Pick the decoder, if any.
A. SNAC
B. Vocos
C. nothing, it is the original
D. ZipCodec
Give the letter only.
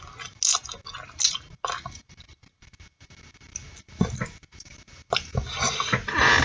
C